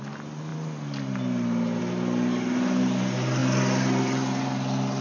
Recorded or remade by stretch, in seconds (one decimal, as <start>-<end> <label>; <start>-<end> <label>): 0.0-5.0 recorded

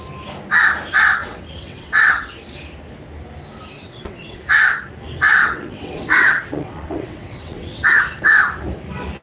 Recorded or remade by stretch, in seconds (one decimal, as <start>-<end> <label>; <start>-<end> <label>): 0.0-1.2 recorded; 1.2-2.4 remade; 2.4-3.8 recorded; 3.8-4.4 remade; 4.4-5.4 recorded; 5.4-8.0 remade; 8.0-9.2 recorded